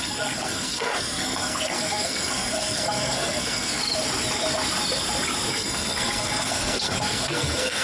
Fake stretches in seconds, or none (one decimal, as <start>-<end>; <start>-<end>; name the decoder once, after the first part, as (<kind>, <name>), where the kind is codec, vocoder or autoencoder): 0.0-3.8 (codec, SNAC); 5.5-7.8

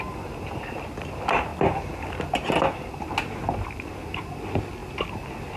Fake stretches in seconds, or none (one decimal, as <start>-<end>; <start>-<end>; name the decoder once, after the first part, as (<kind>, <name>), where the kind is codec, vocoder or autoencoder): none

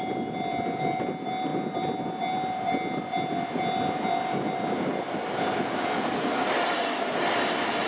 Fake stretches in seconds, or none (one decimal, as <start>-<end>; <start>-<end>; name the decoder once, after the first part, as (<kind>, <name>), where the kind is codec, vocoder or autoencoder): none

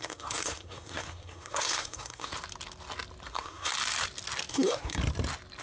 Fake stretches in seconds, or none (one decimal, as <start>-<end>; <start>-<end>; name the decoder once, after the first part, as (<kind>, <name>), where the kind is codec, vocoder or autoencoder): 0.0-2.3 (codec, SNAC); 3.3-3.7; 4.5-5.0

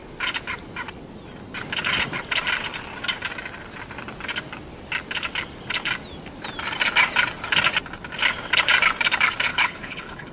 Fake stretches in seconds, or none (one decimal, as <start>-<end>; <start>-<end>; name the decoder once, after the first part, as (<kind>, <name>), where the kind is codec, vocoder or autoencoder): 9.5-10.3 (codec, HILCodec)

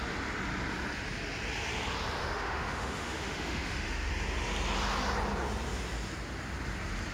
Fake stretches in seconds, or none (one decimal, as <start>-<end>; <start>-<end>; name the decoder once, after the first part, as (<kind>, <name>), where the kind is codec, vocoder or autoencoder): 2.2-4.1 (autoencoder, DAC-VAE)

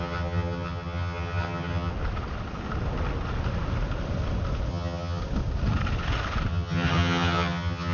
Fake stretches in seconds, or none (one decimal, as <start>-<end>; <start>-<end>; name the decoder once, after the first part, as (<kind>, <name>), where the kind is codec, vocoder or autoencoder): 0.0-1.9 (vocoder, HiFi-GAN); 4.7-5.2; 6.5-7.9